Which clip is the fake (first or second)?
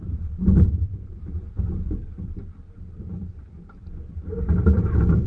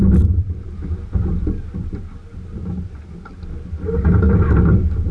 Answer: first